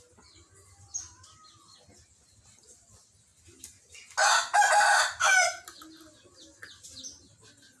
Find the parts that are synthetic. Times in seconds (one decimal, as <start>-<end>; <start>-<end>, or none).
none